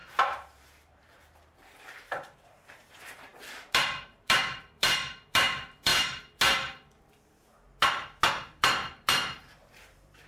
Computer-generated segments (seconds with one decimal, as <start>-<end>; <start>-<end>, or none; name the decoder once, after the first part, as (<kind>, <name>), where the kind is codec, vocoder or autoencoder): 0.0-5.9 (vocoder, BigVGAN v2); 8.3-10.3